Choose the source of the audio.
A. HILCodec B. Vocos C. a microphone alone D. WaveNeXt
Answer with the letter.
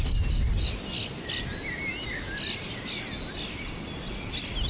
C